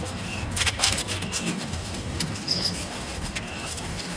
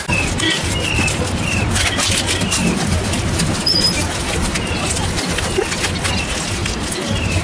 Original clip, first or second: second